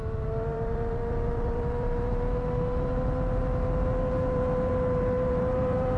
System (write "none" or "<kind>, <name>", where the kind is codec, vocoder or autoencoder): vocoder, BigVGAN v2